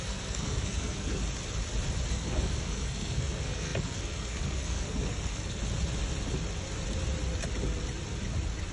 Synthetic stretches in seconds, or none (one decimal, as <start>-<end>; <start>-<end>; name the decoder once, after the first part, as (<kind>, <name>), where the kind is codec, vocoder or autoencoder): 0.0-1.2 (codec, SNAC); 2.1-5.6